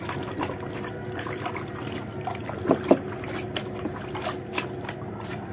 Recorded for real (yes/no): yes